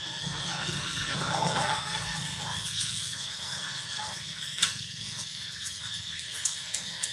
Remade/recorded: remade